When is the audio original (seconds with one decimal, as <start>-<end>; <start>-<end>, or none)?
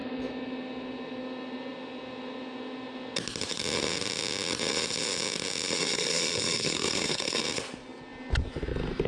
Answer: 0.0-5.8; 7.4-9.1